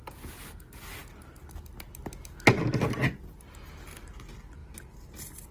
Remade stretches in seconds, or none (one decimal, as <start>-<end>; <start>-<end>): none